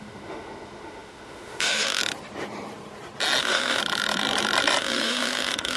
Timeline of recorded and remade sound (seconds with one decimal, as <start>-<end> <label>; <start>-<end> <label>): 0.0-2.0 remade; 2.0-3.4 recorded; 3.4-3.8 remade; 3.8-4.8 recorded; 4.8-5.8 remade